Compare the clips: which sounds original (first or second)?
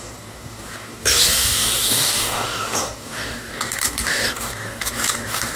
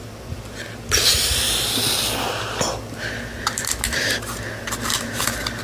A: second